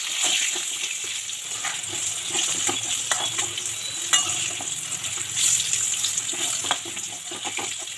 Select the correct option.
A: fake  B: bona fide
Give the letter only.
B